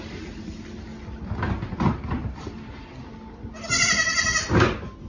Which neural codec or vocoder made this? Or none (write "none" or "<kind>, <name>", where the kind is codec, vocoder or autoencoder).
none